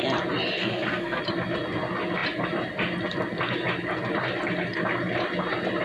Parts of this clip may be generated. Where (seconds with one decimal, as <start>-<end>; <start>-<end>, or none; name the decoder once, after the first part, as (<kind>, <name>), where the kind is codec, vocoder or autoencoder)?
0.6-1.2 (codec, SNAC)